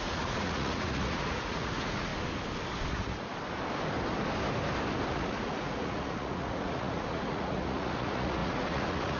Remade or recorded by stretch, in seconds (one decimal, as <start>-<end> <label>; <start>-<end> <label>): 0.0-2.1 remade; 2.1-2.9 recorded; 2.9-3.3 remade; 3.3-5.1 recorded; 5.1-9.2 remade